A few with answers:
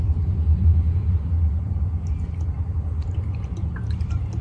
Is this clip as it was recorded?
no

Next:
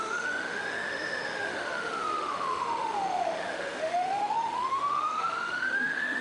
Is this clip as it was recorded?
no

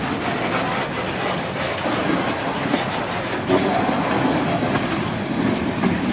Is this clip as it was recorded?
yes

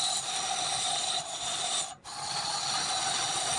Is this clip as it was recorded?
yes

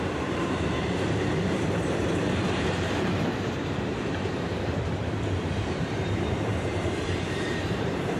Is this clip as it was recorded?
no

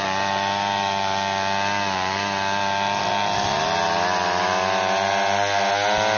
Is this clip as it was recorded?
yes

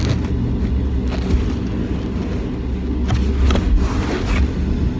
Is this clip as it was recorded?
yes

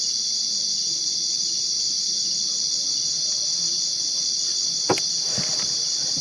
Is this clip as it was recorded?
yes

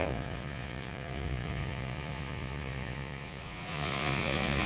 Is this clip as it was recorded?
no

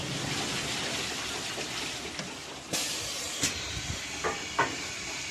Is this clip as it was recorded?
yes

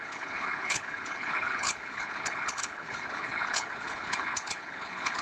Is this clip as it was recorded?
no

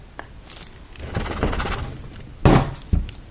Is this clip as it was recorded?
yes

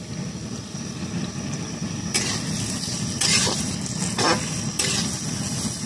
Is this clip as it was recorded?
yes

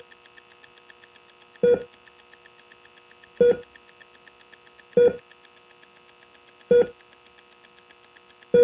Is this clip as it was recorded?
yes